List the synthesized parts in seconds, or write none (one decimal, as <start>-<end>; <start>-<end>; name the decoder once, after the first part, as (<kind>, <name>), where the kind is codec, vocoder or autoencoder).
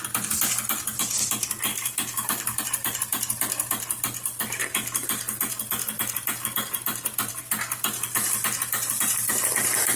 1.7-2.6 (codec, DAC)